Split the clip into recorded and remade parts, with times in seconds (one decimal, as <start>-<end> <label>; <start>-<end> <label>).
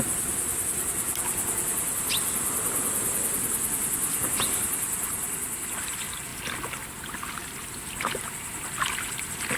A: 0.0-6.3 recorded; 6.3-6.9 remade; 6.9-9.6 recorded